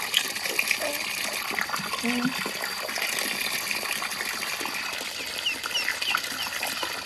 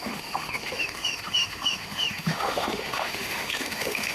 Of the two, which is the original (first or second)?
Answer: first